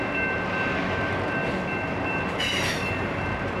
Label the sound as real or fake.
real